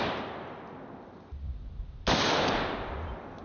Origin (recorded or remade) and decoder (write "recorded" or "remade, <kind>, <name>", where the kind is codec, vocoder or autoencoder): recorded